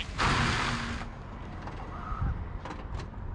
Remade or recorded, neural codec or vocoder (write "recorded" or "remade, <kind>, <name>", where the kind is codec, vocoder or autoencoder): recorded